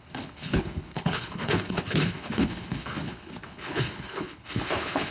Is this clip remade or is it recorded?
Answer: remade